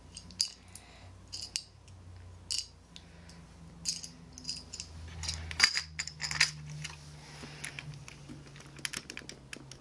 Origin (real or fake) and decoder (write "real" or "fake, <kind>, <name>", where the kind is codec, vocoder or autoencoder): real